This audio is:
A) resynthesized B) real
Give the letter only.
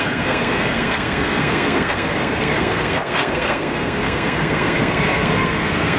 A